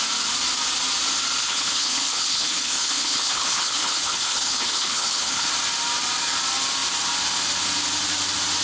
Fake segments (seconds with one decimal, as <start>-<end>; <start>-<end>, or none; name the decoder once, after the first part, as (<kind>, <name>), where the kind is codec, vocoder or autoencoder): 1.4-5.5 (codec, HILCodec)